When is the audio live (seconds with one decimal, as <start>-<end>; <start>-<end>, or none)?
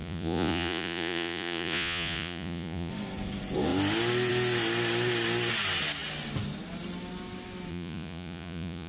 2.9-7.7